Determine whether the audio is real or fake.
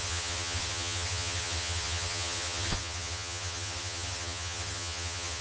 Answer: fake